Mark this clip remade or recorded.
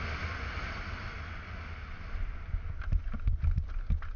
recorded